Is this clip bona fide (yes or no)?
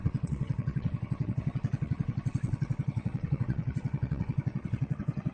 no